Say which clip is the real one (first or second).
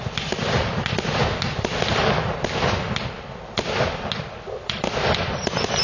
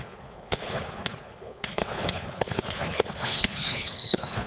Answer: first